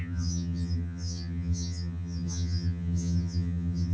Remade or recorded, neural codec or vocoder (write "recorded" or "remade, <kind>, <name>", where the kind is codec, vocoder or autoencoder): remade, vocoder, HiFi-GAN